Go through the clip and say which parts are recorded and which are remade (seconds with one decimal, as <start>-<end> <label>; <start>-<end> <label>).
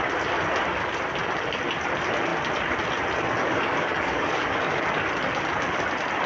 0.0-3.4 recorded; 3.4-4.8 remade; 4.8-6.3 recorded